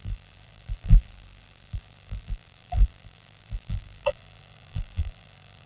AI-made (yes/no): yes